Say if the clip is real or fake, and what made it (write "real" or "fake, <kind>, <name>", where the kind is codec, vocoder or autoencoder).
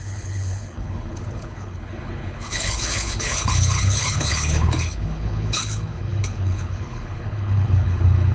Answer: fake, codec, HILCodec